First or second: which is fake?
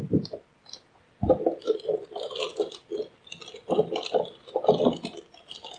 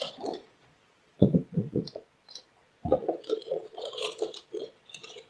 second